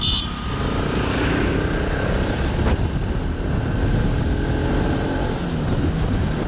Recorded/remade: recorded